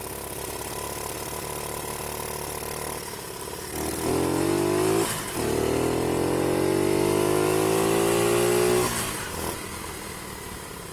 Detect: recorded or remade recorded